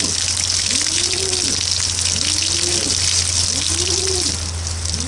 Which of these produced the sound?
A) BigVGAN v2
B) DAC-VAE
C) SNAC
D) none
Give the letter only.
D